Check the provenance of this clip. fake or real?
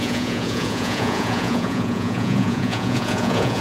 fake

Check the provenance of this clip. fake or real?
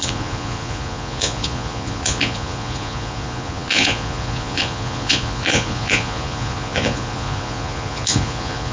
fake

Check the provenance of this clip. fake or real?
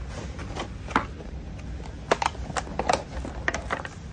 real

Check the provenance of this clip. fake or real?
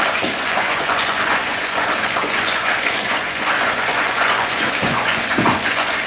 fake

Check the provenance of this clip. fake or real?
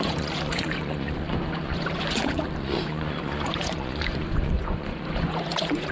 fake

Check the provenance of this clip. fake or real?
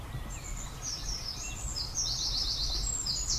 real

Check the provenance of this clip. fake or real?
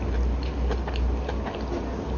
real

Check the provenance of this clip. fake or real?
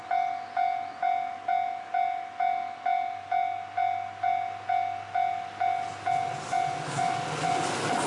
real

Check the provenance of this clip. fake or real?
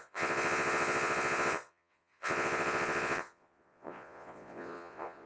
fake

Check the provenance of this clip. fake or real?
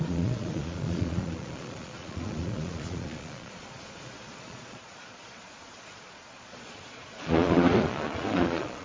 fake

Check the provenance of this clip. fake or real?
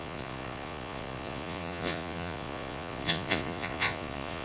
fake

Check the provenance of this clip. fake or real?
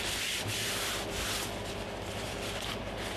real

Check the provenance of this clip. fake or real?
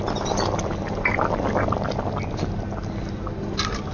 real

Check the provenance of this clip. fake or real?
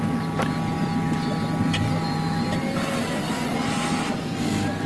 real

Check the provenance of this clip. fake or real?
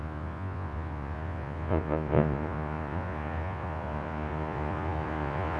fake